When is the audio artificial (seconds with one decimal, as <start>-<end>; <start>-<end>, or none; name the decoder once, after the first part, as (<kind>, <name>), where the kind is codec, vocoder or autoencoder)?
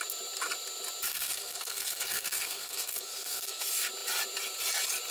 1.1-3.6 (codec, SNAC)